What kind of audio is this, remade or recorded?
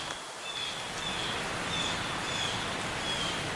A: recorded